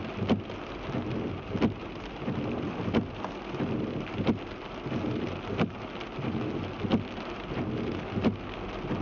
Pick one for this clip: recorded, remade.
recorded